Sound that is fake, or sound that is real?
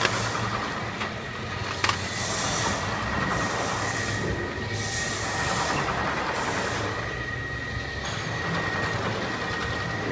real